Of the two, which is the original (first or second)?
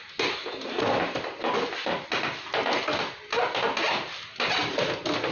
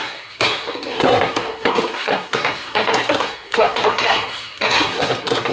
first